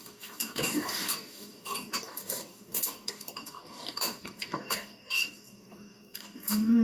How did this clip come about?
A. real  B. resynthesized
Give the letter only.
B